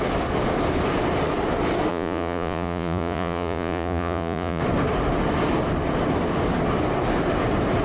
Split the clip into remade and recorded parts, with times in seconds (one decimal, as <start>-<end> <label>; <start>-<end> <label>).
0.0-1.9 recorded; 1.9-4.6 remade; 4.6-7.8 recorded